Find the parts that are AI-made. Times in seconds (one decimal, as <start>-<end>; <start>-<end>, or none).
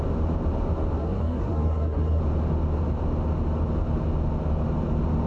1.0-2.2